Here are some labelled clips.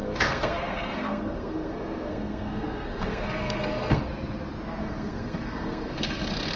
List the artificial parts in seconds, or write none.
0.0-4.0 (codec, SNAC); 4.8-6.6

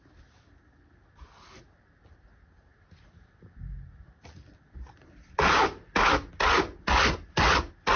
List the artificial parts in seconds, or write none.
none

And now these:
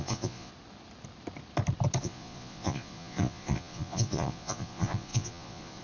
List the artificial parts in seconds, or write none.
0.0-0.5 (vocoder, Vocos); 2.0-5.8

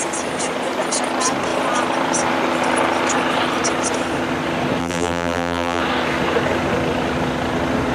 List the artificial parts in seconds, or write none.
4.8-5.8 (vocoder, BigVGAN v2)